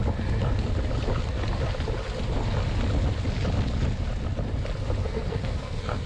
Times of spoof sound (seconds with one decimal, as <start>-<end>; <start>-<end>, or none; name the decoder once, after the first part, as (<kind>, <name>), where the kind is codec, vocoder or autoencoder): 5.0-6.1 (codec, SNAC)